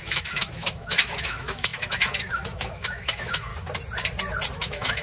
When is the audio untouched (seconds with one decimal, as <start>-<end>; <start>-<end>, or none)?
3.5-4.5